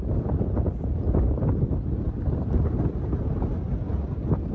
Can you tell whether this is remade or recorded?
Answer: recorded